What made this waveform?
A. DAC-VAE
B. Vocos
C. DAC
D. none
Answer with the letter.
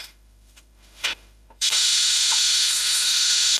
A